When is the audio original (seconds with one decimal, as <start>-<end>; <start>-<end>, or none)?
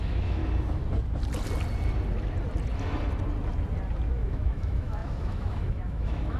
0.4-4.1